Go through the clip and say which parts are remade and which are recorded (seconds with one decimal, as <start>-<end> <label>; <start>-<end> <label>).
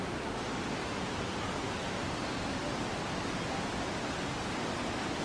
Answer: 0.0-5.2 recorded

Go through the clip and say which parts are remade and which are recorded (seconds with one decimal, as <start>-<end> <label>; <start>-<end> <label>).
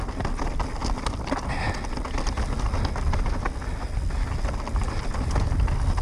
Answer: 0.0-6.0 recorded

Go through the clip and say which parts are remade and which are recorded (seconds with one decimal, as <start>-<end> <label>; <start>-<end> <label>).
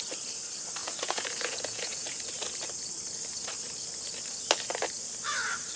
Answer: 0.0-0.8 recorded; 0.8-2.3 remade; 2.3-5.8 recorded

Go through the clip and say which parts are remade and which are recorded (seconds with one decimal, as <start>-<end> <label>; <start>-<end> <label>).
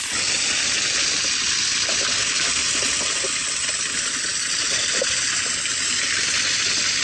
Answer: 0.0-7.0 recorded